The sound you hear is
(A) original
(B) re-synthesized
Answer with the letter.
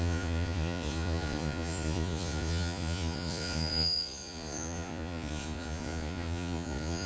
B